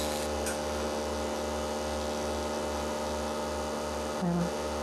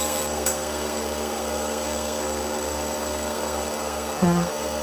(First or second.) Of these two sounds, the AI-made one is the second